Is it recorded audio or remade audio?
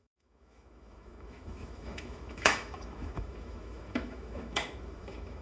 remade